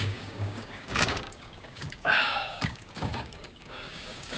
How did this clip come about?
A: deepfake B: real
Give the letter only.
A